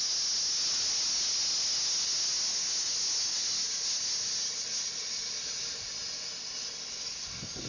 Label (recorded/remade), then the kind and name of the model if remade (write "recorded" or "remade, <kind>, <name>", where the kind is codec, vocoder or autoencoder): recorded